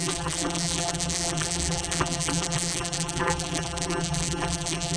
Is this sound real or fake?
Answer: fake